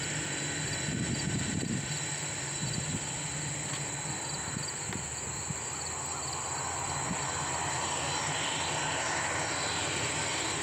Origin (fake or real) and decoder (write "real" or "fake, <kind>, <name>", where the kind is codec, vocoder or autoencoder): real